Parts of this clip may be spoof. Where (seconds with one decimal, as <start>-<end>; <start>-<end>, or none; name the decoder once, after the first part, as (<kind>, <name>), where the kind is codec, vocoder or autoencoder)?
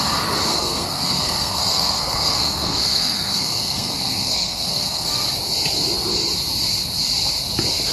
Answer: 0.5-5.2 (codec, SNAC)